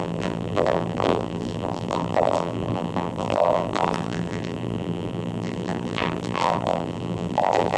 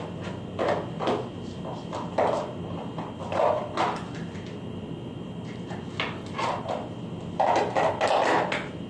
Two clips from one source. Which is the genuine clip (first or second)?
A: second